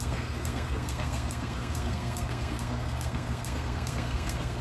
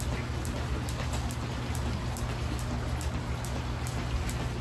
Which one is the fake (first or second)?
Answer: first